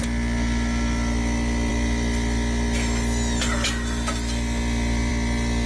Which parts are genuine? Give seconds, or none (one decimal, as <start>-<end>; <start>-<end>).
0.0-5.7